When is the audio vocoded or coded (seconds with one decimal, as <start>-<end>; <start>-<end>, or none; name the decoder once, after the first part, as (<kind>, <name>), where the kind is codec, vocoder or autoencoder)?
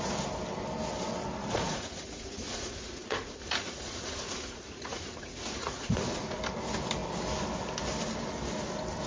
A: 1.4-6.4 (vocoder, Vocos)